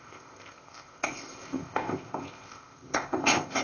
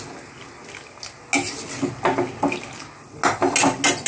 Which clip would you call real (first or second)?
second